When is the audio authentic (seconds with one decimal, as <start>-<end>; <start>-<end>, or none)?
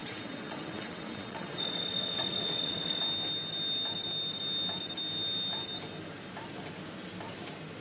3.0-7.8